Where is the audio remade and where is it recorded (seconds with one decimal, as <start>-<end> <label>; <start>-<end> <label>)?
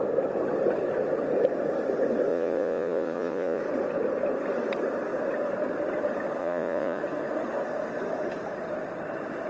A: 0.0-2.3 recorded; 2.3-3.6 remade; 3.6-6.4 recorded; 6.4-7.0 remade; 7.0-9.5 recorded